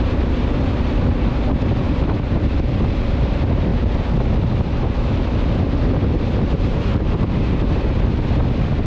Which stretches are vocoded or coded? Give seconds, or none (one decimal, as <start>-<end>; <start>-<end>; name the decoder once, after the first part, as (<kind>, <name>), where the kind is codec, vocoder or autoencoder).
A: 0.0-3.7 (vocoder, BigVGAN v2); 7.9-8.9